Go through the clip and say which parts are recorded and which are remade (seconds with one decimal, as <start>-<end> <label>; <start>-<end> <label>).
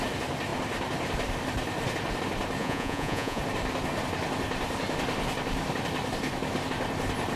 0.0-2.6 recorded; 2.6-3.4 remade; 3.4-7.4 recorded